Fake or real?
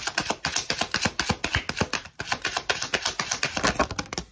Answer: real